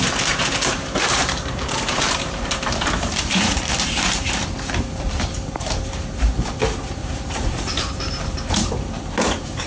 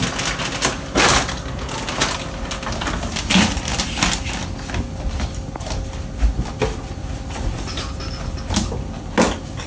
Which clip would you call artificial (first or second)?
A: first